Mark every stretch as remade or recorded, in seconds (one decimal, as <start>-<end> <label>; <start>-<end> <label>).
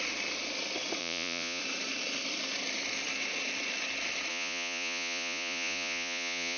0.0-1.0 recorded; 1.0-1.6 remade; 1.6-4.3 recorded; 4.3-6.6 remade